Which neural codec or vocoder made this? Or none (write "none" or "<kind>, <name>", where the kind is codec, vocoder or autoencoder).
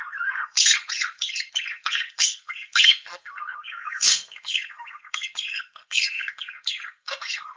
codec, SNAC